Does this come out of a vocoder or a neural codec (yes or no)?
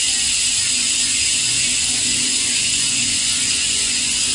yes